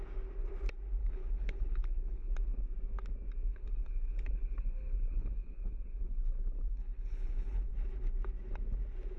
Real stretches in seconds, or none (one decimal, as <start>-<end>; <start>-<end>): 0.0-1.0; 2.3-3.5; 7.7-9.2